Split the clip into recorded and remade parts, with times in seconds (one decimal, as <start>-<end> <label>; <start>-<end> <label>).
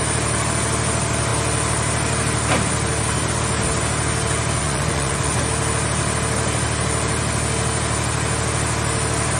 0.0-4.6 recorded; 4.6-5.4 remade; 5.4-9.4 recorded